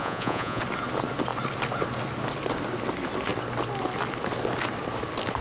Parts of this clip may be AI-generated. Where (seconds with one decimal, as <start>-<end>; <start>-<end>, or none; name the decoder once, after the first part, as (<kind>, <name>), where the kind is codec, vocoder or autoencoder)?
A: 0.0-0.6 (vocoder, Vocos)